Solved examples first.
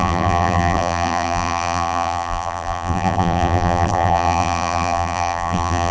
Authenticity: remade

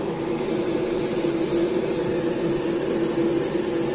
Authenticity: recorded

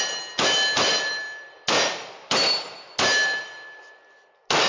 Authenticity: recorded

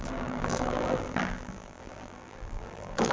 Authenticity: remade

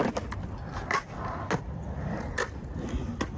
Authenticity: recorded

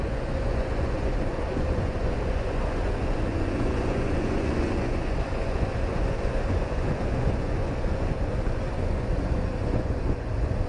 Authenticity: remade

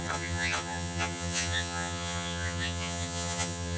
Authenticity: remade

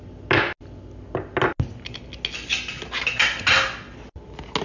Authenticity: recorded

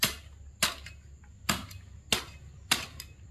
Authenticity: recorded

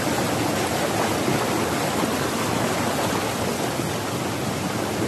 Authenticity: recorded